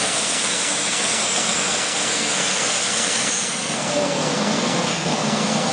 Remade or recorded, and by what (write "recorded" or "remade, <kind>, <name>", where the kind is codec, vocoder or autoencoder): remade, codec, SNAC